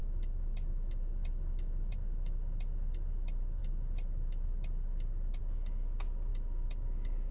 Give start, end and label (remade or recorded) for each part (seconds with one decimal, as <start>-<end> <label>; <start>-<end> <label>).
0.0-7.3 recorded